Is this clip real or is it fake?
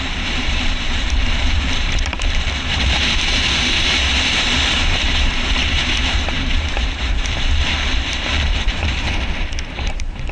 fake